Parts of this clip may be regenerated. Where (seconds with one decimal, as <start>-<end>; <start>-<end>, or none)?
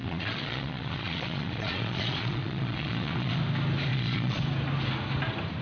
0.0-3.4; 3.9-4.4